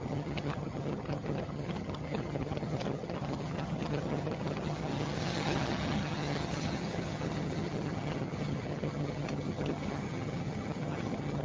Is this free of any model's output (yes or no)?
no